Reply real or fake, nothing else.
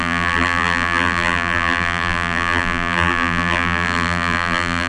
fake